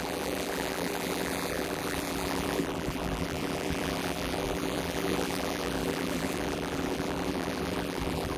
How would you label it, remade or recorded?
remade